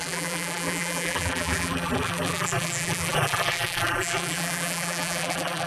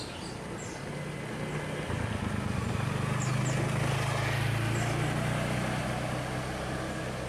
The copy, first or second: first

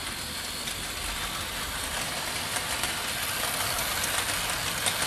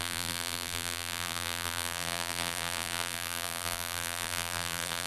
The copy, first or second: second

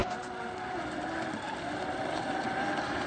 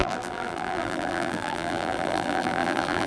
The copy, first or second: second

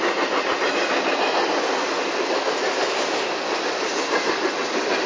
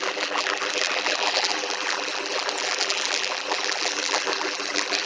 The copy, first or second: second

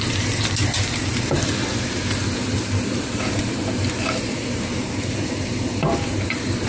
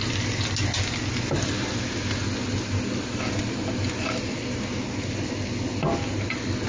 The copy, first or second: first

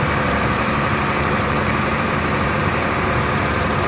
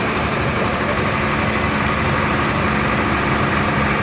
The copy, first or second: first